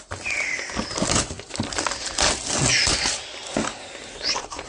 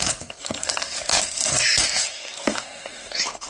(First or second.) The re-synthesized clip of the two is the second